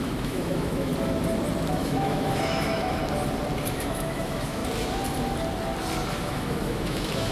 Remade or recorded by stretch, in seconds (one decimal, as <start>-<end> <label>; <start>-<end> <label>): 0.0-0.9 remade; 0.9-1.7 recorded; 1.7-3.0 remade; 3.0-3.7 recorded; 3.7-4.6 remade; 4.6-6.2 recorded; 6.2-7.3 remade